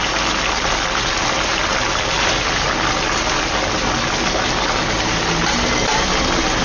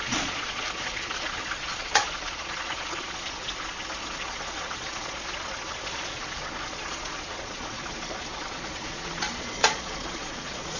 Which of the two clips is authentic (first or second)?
first